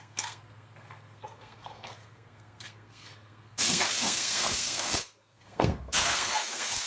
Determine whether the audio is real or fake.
fake